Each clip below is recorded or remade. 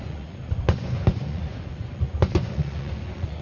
remade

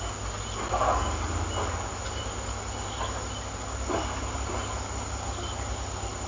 recorded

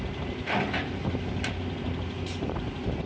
recorded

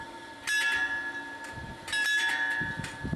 recorded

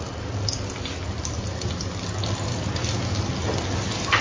recorded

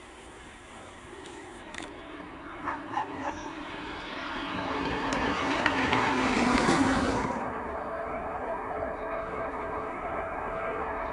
remade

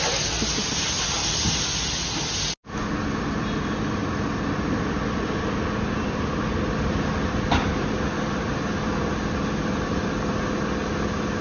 recorded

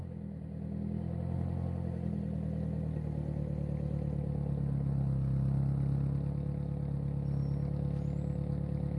recorded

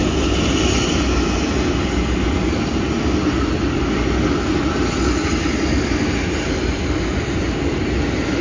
recorded